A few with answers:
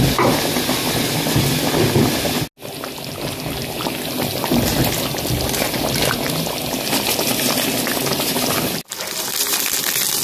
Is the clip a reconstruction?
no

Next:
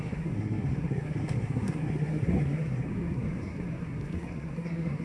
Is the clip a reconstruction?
yes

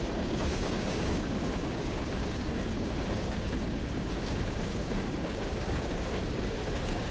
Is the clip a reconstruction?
yes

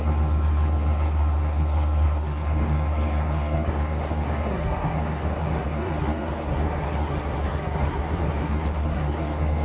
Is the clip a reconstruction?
yes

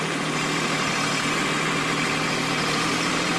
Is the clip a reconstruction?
yes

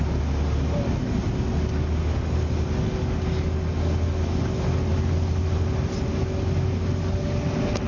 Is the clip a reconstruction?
no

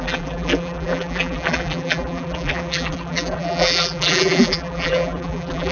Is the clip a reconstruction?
yes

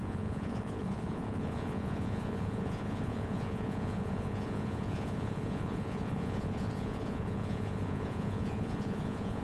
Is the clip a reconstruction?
yes